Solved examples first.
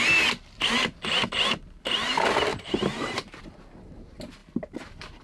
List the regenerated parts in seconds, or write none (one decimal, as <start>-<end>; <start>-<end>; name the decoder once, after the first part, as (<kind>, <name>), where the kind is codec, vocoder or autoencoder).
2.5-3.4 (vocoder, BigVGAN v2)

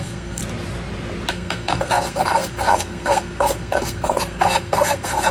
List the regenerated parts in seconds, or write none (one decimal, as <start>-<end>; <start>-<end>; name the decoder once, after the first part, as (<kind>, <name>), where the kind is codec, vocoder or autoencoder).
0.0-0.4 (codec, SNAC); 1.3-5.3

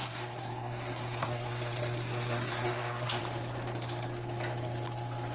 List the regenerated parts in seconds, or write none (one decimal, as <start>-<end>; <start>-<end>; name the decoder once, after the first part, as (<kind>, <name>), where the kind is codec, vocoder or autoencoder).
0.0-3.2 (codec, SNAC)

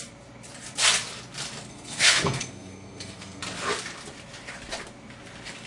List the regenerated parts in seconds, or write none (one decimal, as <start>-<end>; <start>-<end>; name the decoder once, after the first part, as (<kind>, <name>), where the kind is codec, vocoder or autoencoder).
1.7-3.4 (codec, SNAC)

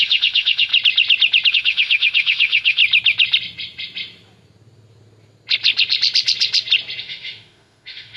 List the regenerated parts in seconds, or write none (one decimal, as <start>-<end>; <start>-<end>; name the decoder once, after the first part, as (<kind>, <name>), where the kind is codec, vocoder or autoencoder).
0.0-0.7 (autoencoder, DAC-VAE); 1.5-2.8; 7.0-8.2